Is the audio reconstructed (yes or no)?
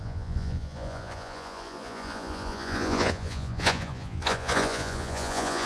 yes